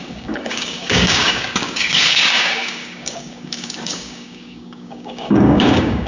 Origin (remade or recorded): remade